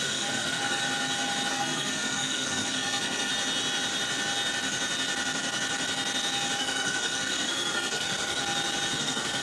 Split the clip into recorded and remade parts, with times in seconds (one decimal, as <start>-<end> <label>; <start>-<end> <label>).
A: 0.0-0.8 remade; 0.8-1.5 recorded; 1.5-3.3 remade; 3.3-6.6 recorded; 6.6-8.4 remade; 8.4-9.0 recorded; 9.0-9.4 remade